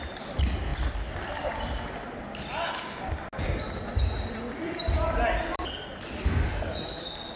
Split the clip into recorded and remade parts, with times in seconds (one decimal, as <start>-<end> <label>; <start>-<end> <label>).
0.0-7.4 recorded